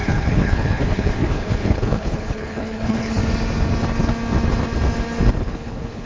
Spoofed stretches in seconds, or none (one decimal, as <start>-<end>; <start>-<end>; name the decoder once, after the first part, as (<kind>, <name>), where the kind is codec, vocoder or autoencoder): 0.0-3.2 (codec, HILCodec); 5.4-6.1